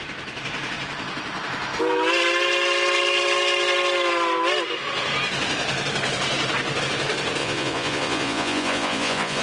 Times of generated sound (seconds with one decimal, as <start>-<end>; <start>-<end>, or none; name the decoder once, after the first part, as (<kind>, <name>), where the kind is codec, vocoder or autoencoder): 7.4-9.4 (vocoder, Vocos)